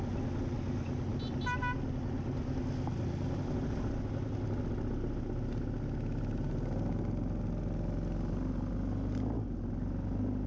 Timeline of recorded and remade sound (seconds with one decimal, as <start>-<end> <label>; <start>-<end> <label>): 0.0-10.5 recorded